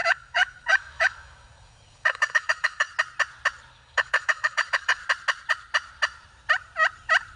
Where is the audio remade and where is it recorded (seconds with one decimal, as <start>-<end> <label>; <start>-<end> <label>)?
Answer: 0.0-2.9 remade; 2.9-3.7 recorded; 3.7-5.0 remade; 5.0-7.4 recorded